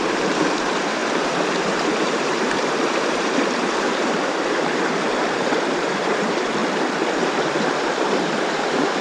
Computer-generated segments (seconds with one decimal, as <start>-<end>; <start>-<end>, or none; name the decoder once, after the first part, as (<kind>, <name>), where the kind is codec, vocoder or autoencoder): 0.0-1.0 (vocoder, BigVGAN v2); 1.5-6.6; 7.3-9.0